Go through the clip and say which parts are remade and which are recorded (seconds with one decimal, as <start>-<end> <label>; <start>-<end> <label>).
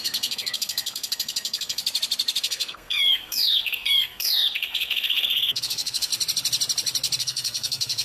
0.0-1.8 remade; 1.8-2.4 recorded; 2.4-6.1 remade; 6.1-7.2 recorded; 7.2-8.0 remade